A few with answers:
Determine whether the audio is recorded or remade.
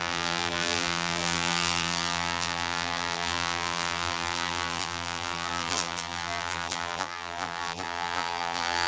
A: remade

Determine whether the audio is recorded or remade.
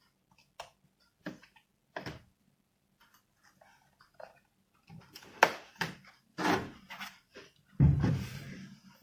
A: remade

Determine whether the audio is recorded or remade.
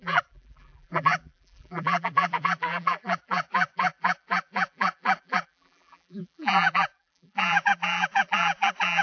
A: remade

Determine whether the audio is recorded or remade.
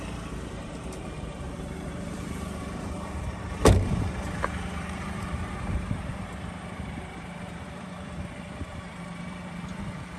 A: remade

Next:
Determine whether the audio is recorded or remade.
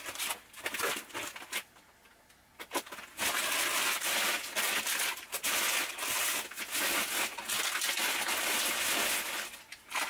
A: recorded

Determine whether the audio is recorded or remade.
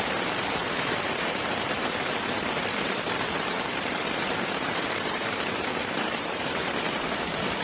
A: remade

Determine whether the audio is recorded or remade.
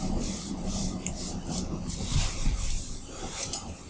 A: remade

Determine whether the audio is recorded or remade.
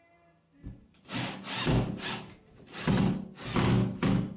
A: recorded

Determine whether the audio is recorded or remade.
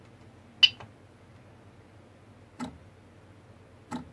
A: recorded